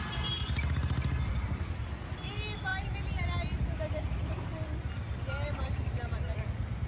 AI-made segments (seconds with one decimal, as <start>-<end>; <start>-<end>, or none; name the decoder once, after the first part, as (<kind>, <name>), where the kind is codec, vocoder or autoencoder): none